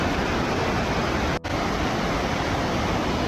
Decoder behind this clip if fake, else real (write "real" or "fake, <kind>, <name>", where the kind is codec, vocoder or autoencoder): real